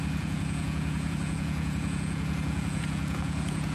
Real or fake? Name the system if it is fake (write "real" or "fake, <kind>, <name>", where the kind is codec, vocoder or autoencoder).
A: fake, vocoder, Vocos